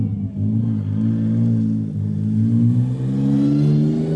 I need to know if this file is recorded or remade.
recorded